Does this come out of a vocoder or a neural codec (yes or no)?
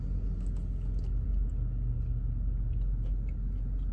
no